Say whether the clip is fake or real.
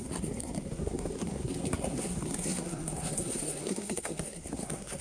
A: fake